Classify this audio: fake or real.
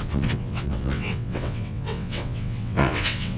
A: fake